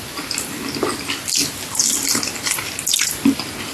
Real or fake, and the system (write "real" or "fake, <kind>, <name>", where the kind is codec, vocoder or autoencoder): real